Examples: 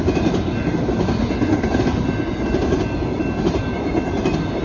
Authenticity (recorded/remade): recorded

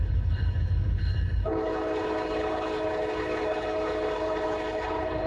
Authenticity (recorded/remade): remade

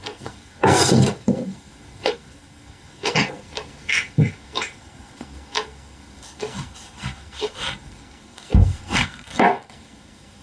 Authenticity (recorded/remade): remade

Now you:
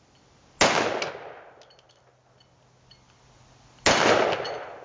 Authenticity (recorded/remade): recorded